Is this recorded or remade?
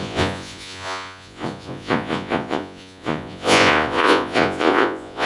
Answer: remade